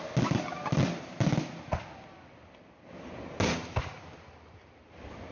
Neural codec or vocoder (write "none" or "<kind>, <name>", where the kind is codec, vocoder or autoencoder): none